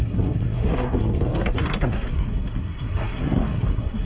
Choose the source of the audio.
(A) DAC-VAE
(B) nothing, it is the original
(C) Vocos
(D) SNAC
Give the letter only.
D